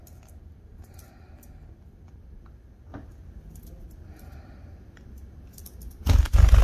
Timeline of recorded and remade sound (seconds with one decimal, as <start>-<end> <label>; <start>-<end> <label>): 0.0-6.6 recorded